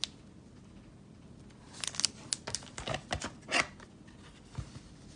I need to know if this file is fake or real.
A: real